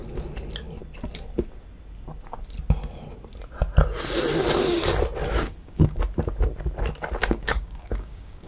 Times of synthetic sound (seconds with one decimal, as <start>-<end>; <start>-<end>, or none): 5.2-6.0; 7.2-8.5